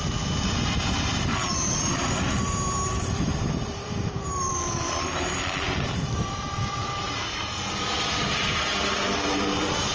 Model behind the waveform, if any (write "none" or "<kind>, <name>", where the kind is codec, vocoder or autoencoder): vocoder, BigVGAN v2